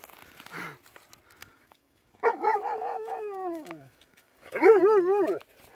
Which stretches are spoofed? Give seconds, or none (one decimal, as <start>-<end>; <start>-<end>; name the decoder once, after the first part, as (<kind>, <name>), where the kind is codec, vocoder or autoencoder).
1.4-4.8 (codec, DAC)